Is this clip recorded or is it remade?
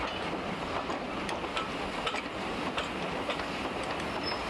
recorded